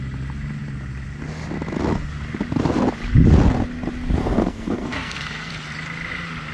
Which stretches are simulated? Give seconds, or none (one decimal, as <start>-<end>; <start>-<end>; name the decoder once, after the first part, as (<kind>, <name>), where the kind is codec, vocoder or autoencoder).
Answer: 4.2-5.5 (codec, SNAC)